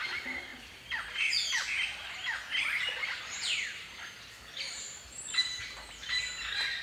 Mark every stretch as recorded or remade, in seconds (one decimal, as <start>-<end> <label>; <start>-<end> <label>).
0.0-6.8 recorded